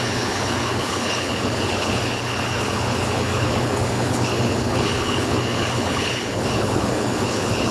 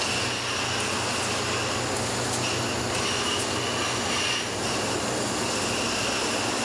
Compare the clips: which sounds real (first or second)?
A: second